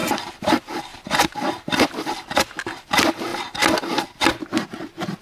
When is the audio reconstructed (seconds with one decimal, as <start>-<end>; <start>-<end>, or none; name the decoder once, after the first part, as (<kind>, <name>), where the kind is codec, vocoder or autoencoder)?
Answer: 0.0-0.5 (vocoder, BigVGAN v2); 0.9-1.8; 3.3-4.4